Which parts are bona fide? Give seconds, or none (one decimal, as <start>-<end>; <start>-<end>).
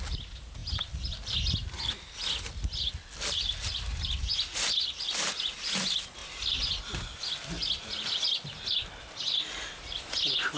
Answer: 0.0-10.6